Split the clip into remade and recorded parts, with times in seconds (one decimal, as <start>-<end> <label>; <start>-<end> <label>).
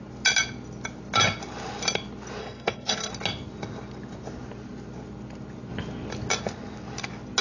0.0-2.4 recorded; 2.4-3.1 remade; 3.1-7.4 recorded